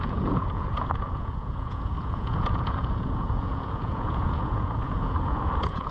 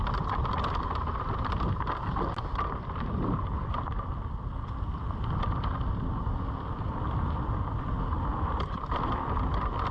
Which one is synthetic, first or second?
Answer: first